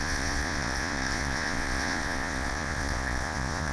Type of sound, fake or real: fake